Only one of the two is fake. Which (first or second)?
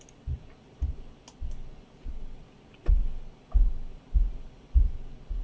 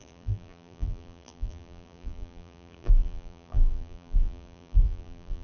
second